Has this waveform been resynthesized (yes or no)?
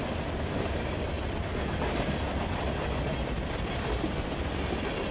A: no